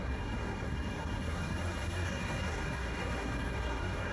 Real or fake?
fake